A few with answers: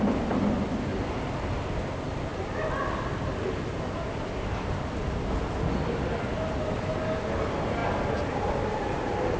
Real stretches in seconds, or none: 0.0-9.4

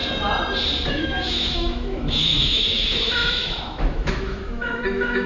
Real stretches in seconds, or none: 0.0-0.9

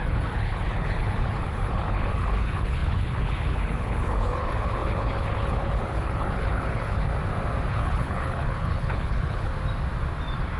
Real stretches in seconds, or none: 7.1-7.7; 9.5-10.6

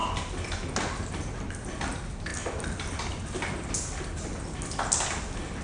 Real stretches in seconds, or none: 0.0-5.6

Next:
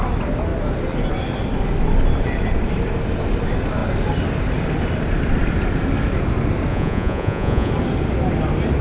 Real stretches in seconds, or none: 0.0-6.7; 7.7-8.8

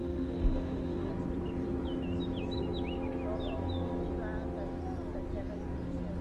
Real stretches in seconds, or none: 1.1-6.2

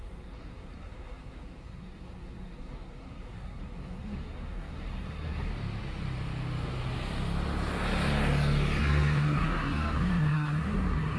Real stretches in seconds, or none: 5.5-8.8